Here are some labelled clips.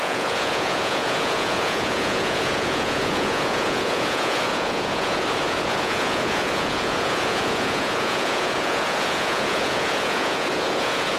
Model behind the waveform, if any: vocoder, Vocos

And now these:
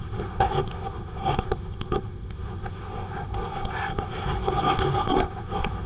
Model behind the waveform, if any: codec, SNAC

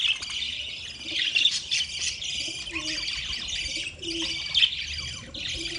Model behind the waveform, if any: none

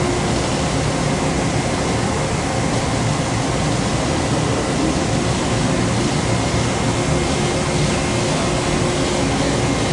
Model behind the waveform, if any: none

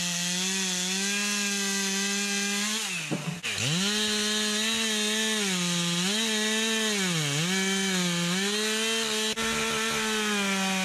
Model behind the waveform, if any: none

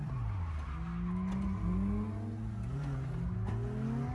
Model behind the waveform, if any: none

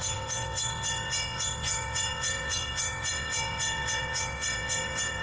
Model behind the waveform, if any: vocoder, WaveNeXt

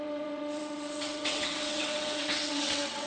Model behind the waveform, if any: vocoder, WaveNeXt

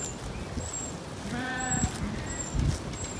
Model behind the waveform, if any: none